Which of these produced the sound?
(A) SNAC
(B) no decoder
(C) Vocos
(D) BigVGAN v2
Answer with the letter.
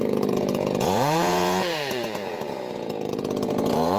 C